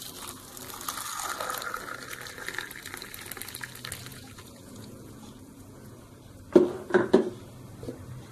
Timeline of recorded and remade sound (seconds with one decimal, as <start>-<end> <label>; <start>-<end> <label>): 0.0-4.1 recorded; 4.1-6.0 remade; 6.0-8.3 recorded